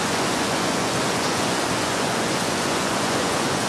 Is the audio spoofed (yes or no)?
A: yes